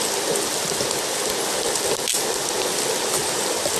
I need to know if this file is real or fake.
real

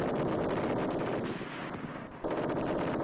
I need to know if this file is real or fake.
real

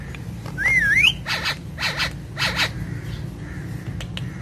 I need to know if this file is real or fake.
real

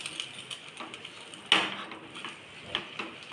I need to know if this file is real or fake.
real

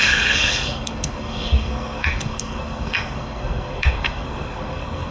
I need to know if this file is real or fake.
fake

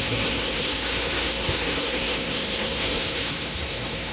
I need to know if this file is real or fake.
fake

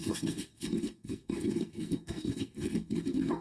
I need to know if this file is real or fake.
fake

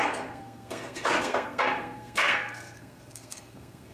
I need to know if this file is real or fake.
fake